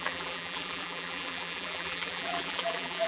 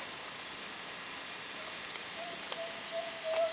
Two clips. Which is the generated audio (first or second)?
first